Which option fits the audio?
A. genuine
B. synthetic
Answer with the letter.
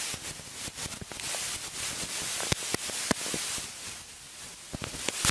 A